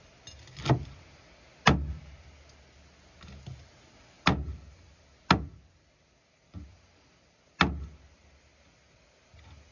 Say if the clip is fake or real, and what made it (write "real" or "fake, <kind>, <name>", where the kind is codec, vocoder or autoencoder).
real